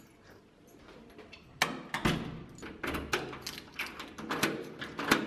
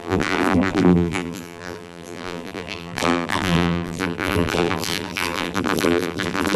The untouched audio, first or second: first